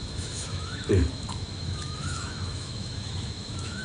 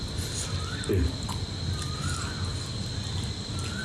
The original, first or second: second